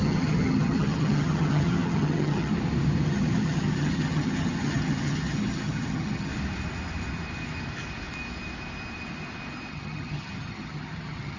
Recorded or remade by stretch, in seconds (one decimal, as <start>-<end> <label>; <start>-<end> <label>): 0.0-2.5 remade; 2.5-3.1 recorded; 3.1-6.3 remade; 6.3-9.7 recorded; 9.7-11.4 remade